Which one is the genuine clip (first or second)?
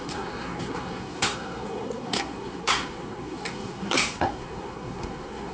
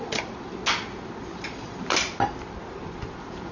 second